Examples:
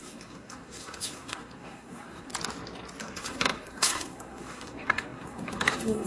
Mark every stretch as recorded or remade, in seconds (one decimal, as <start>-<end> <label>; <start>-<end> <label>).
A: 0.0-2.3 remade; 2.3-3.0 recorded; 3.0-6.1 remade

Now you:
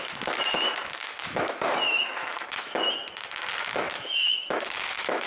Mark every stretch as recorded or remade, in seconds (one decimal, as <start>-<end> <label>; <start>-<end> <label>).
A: 0.0-3.0 remade; 3.0-3.6 recorded; 3.6-5.3 remade

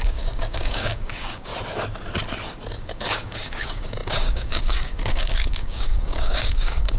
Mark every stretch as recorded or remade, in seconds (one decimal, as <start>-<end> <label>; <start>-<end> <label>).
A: 0.0-1.5 remade; 1.5-2.7 recorded; 2.7-7.0 remade